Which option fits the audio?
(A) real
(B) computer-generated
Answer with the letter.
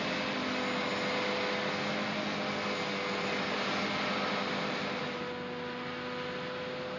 A